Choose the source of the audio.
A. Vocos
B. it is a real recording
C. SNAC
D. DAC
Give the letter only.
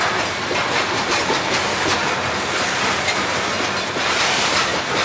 B